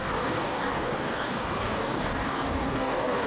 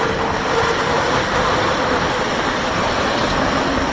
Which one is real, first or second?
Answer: second